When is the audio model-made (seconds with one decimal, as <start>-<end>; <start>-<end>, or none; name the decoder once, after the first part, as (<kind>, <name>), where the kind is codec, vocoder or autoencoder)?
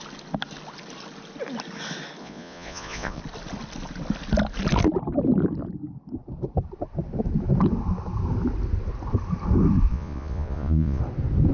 2.2-3.2 (vocoder, Vocos); 9.9-11.0